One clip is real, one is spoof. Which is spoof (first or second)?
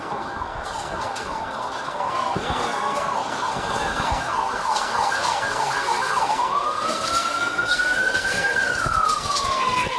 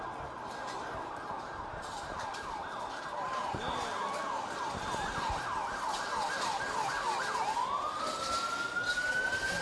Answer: first